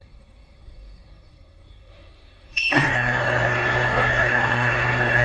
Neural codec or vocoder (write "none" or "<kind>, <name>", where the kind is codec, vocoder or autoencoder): codec, SNAC